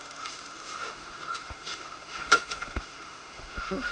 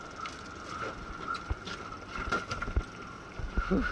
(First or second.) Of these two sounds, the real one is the second